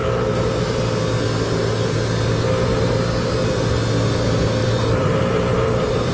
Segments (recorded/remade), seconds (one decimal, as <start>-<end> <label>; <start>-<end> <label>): 0.0-4.6 recorded; 4.6-6.1 remade